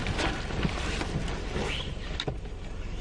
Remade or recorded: recorded